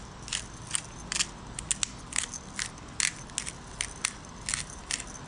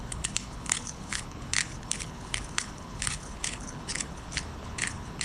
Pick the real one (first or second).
first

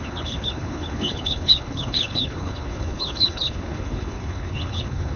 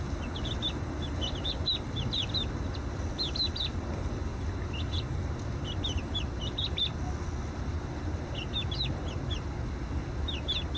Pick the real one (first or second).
second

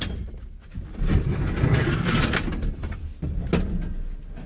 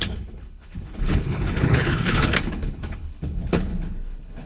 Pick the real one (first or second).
first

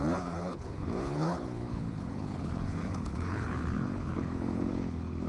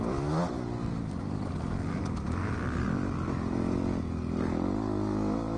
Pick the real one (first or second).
second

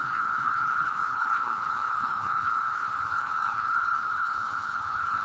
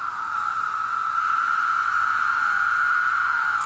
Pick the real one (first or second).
second